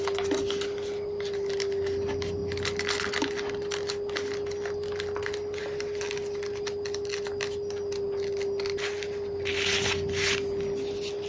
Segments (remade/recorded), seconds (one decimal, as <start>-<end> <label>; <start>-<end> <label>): 0.0-11.3 recorded